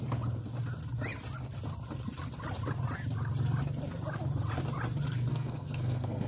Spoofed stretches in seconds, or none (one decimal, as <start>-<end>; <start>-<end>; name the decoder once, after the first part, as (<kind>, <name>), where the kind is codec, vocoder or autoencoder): 5.3-6.3 (codec, SNAC)